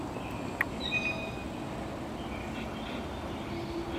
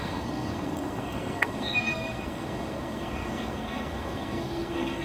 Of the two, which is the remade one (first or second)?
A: second